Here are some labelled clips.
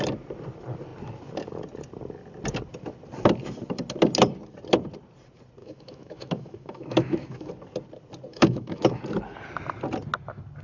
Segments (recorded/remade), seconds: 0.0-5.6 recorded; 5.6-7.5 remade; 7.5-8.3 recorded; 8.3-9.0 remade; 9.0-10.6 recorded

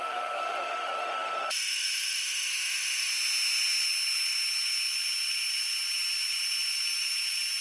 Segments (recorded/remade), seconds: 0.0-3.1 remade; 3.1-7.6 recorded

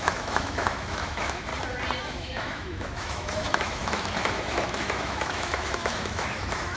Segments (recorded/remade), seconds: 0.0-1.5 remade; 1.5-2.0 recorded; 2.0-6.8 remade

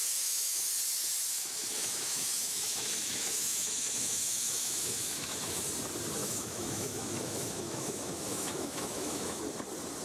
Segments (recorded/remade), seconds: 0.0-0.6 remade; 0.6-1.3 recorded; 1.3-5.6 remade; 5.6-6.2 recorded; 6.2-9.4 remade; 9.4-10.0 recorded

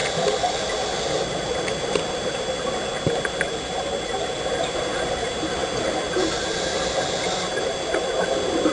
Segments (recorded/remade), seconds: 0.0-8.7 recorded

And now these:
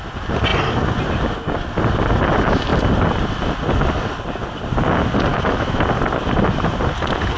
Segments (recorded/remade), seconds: 0.0-5.3 recorded; 5.3-5.8 remade; 5.8-7.4 recorded

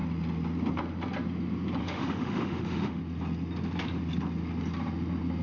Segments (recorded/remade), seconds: 0.0-1.8 recorded; 1.8-3.0 remade; 3.0-5.4 recorded